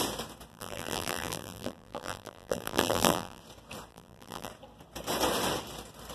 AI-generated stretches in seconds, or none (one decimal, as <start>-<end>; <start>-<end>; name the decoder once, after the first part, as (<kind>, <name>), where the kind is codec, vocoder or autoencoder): 0.5-3.4 (vocoder, BigVGAN v2); 3.9-4.5